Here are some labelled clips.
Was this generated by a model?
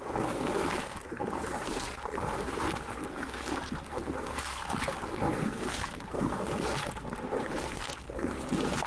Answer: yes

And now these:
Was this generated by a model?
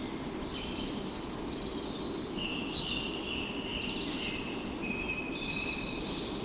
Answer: no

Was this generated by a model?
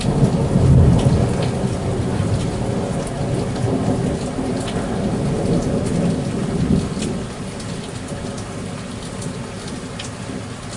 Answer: no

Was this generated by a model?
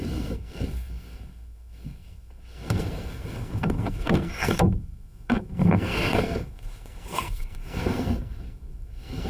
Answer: yes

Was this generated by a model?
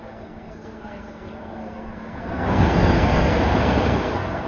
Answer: yes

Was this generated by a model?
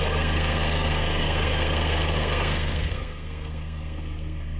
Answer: yes